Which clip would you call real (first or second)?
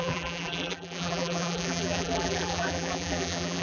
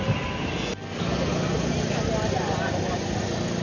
second